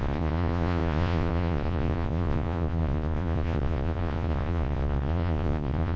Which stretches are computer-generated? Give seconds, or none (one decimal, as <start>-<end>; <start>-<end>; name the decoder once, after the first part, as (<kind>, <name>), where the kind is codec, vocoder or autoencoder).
0.0-6.0 (vocoder, Vocos)